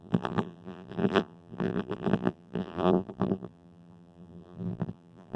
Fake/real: fake